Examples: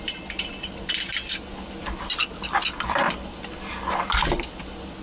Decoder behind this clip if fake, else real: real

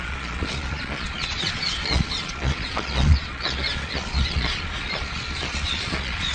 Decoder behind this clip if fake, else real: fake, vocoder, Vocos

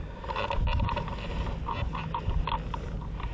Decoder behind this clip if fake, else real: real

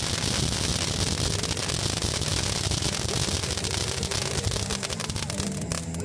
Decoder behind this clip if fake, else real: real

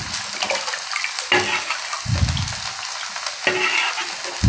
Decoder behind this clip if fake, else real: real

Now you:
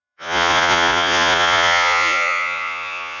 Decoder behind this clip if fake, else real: fake, vocoder, Vocos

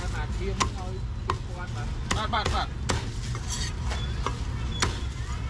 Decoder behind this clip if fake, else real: real